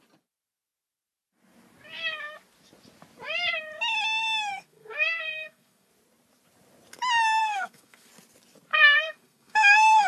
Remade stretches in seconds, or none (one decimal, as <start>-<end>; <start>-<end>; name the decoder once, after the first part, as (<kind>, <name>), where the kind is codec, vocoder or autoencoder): 4.5-5.9 (codec, SNAC); 7.4-8.1; 8.7-10.1